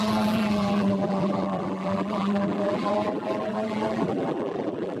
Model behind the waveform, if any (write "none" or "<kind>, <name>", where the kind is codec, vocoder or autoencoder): vocoder, BigVGAN v2